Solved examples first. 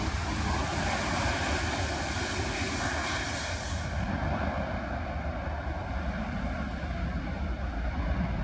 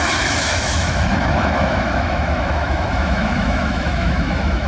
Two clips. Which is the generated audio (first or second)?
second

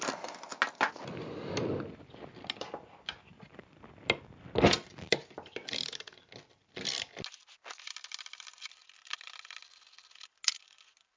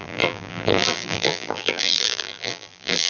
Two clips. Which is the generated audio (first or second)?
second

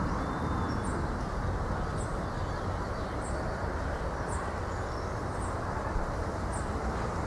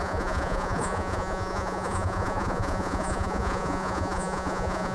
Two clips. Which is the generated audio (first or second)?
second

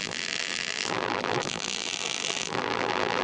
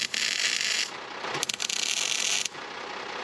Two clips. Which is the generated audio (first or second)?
first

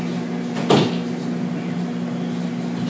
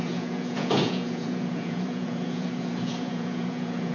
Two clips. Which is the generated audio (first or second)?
second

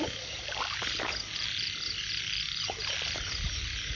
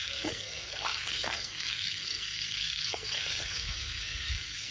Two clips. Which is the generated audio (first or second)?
second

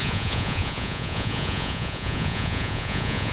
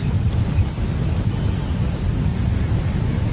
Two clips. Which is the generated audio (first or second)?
first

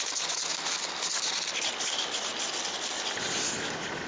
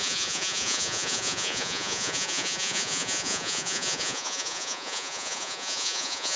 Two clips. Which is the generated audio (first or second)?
second